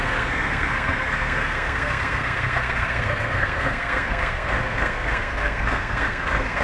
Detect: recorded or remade remade